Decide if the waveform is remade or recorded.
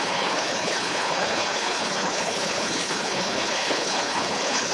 remade